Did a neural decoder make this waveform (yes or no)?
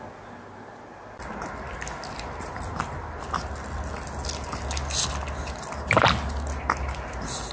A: no